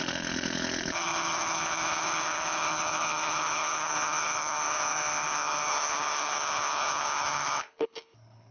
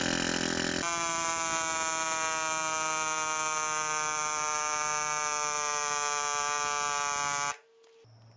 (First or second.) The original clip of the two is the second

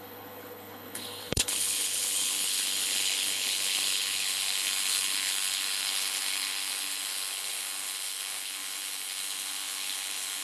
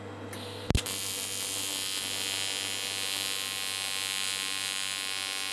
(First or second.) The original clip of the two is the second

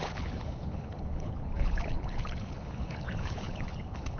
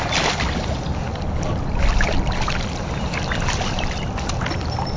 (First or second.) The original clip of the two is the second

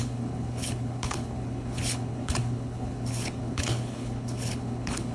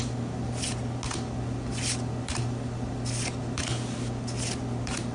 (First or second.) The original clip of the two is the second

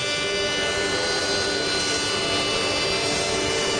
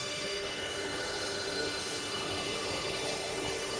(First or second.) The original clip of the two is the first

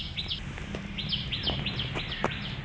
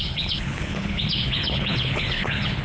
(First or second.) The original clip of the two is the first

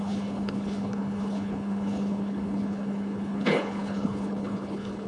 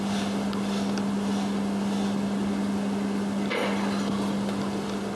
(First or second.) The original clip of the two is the second